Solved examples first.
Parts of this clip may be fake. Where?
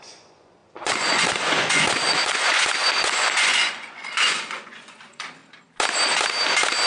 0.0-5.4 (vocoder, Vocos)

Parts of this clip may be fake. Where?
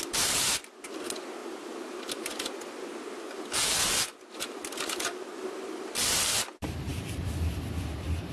none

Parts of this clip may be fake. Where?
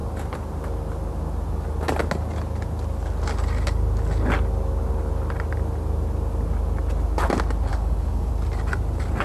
7.7-8.3 (codec, DAC)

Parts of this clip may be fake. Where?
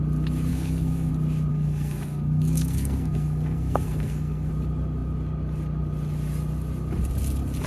0.5-1.1 (codec, SNAC); 1.5-4.5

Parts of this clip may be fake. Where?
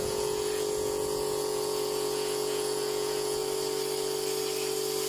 0.0-3.4 (vocoder, Vocos)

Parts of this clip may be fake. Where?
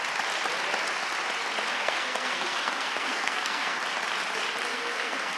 1.7-3.8 (codec, SNAC); 4.7-5.4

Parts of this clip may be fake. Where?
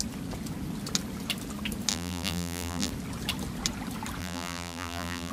1.9-2.9 (vocoder, BigVGAN v2); 4.2-5.3